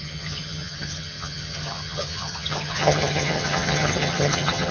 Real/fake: fake